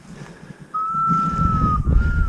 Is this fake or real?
real